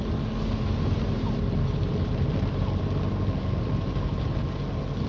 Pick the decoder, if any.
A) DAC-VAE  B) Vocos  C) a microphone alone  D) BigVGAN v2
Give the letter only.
C